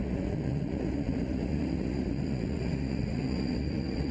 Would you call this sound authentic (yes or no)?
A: no